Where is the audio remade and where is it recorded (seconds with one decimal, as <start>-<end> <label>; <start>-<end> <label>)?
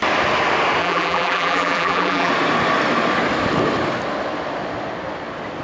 0.0-0.8 recorded; 0.8-2.3 remade; 2.3-5.6 recorded